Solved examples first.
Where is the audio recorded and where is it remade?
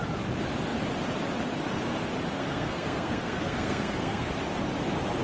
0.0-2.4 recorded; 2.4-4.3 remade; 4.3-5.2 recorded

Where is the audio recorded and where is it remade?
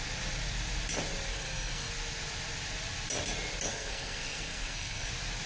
0.0-1.3 recorded; 1.3-1.9 remade; 1.9-3.7 recorded; 3.7-5.1 remade; 5.1-5.5 recorded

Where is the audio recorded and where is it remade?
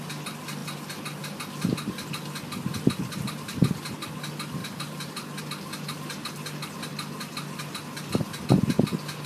0.0-9.3 recorded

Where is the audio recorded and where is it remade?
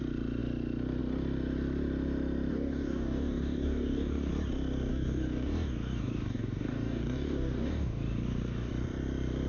0.0-2.5 recorded; 2.5-4.3 remade; 4.3-4.9 recorded; 4.9-8.7 remade; 8.7-9.5 recorded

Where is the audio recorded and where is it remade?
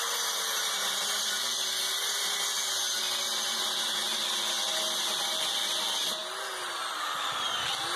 0.0-8.0 recorded